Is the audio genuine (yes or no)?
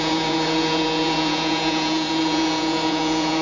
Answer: no